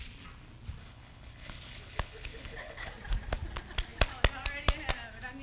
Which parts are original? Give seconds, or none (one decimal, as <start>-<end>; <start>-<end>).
0.0-0.8; 2.9-5.4